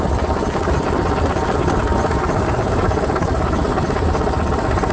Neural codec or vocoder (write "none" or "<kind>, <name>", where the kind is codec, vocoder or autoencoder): none